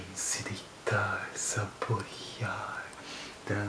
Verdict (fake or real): real